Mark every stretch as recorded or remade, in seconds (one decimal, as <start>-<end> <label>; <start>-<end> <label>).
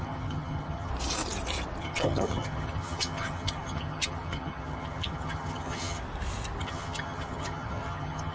0.0-0.9 remade; 0.9-1.8 recorded; 1.8-6.0 remade; 6.0-6.6 recorded; 6.6-8.3 remade